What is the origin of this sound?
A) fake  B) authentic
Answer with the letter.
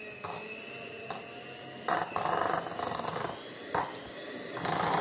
B